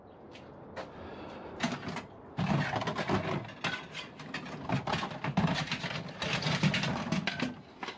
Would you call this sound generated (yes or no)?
no